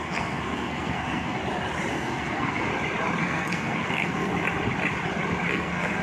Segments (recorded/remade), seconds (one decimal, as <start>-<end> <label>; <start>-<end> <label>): 0.0-1.4 remade; 1.4-1.9 recorded; 1.9-2.7 remade; 2.7-3.2 recorded; 3.2-4.3 remade; 4.3-5.5 recorded; 5.5-6.0 remade